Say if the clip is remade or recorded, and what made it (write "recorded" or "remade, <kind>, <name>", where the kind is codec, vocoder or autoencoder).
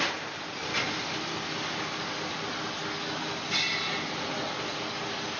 recorded